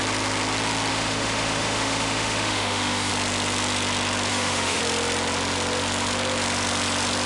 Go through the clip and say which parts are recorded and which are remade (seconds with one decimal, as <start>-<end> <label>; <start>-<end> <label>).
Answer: 0.0-0.9 recorded; 0.9-3.1 remade; 3.1-4.3 recorded; 4.3-4.8 remade; 4.8-7.3 recorded